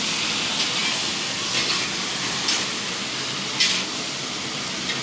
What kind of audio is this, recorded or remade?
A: recorded